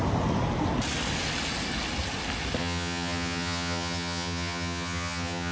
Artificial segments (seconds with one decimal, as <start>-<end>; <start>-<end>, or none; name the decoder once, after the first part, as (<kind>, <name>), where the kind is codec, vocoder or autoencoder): 2.6-5.5 (vocoder, HiFi-GAN)